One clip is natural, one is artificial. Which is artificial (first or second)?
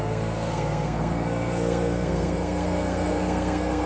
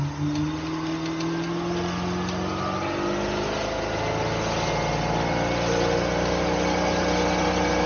first